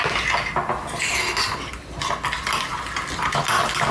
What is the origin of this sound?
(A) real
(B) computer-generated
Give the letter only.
A